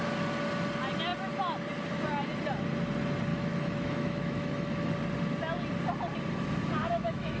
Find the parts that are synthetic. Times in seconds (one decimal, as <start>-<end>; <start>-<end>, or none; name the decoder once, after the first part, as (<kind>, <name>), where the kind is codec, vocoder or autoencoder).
3.3-4.9 (autoencoder, DAC-VAE); 6.8-7.4